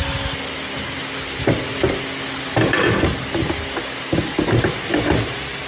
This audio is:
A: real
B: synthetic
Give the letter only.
A